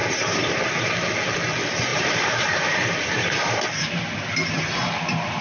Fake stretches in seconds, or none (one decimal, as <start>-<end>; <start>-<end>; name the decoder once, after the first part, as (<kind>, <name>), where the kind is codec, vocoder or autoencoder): 0.0-0.9 (vocoder, BigVGAN v2); 1.9-5.4

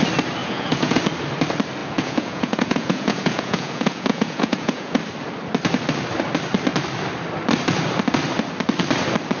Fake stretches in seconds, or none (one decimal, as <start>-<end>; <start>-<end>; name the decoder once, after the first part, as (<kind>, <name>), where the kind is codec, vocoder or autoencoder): 0.4-1.0 (vocoder, Vocos); 1.8-5.0

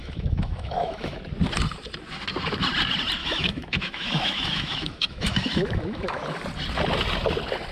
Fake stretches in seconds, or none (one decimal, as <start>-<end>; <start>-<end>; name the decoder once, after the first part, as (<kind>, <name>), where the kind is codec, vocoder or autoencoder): 0.0-1.2 (autoencoder, DAC-VAE); 3.2-6.2

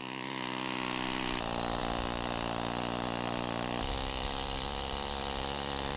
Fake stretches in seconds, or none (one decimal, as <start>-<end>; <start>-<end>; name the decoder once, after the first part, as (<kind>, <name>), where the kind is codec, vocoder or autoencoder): none